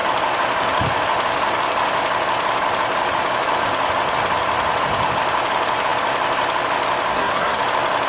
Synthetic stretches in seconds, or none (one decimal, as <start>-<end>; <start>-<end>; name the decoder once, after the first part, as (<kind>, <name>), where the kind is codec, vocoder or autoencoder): 7.1-7.6 (codec, SNAC)